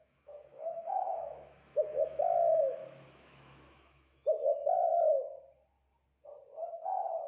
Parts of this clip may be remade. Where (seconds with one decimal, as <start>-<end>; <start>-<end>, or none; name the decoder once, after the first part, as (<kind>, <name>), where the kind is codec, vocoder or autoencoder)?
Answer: 0.0-4.4 (autoencoder, DAC-VAE)

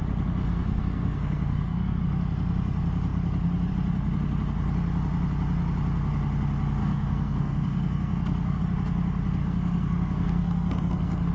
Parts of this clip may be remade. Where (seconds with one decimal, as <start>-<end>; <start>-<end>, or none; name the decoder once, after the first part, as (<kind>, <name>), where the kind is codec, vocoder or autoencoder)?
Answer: 0.4-2.0 (codec, SNAC); 6.8-8.6; 9.4-11.3

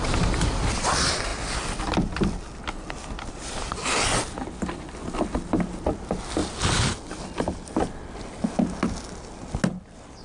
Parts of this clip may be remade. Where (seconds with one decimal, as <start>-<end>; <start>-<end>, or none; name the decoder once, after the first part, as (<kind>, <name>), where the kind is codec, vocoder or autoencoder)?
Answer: none